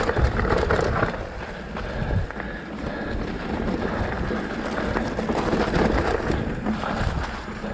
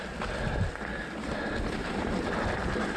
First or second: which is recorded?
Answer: first